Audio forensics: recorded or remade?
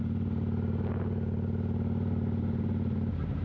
recorded